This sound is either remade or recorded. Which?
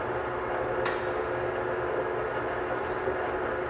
recorded